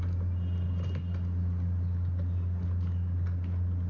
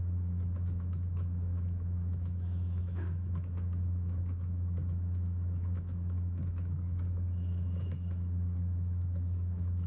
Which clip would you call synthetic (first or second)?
second